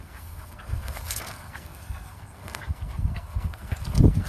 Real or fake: fake